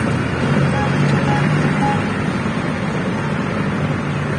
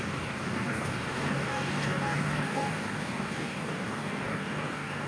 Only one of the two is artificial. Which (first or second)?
second